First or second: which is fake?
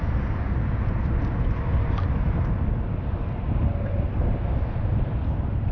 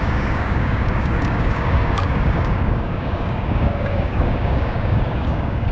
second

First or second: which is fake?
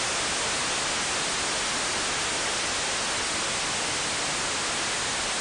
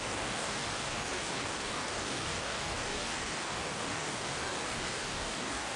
second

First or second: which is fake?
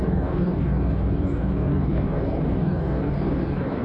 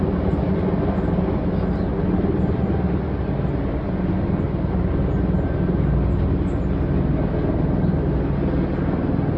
first